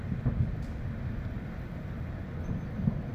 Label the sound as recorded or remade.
recorded